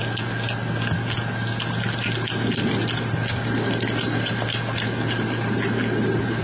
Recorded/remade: recorded